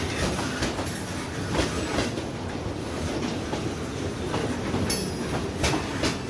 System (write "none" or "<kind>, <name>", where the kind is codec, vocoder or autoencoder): none